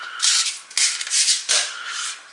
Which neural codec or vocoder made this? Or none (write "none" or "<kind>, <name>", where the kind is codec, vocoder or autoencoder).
none